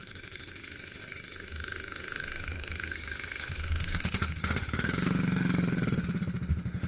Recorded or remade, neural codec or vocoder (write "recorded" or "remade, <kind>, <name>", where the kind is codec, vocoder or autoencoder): remade, autoencoder, DAC-VAE